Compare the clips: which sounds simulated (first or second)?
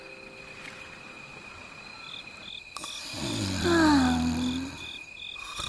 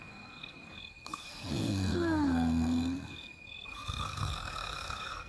second